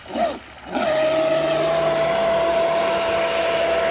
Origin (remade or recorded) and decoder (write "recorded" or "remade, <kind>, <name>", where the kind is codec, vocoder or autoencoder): recorded